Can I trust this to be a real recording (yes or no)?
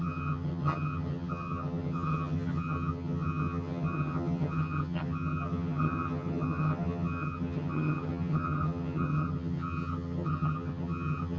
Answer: no